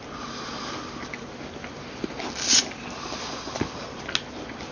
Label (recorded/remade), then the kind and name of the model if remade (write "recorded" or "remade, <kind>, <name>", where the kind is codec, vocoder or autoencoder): recorded